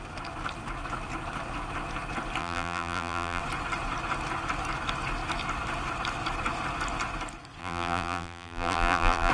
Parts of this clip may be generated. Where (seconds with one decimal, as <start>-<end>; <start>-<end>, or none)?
2.4-3.4; 7.6-9.3